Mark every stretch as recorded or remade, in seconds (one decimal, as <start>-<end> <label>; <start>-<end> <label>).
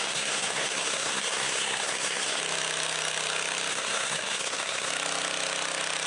0.0-2.4 remade; 2.4-3.7 recorded; 3.7-4.9 remade; 4.9-6.1 recorded